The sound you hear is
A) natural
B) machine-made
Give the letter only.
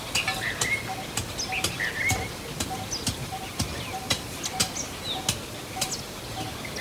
A